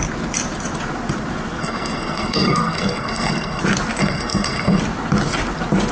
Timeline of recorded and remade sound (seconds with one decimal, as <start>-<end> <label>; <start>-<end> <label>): 0.0-1.6 recorded; 1.6-3.6 remade; 3.6-4.0 recorded; 4.0-4.8 remade; 4.8-5.9 recorded